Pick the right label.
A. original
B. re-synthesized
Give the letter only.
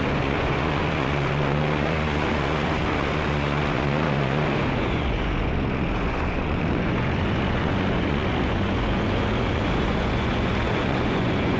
B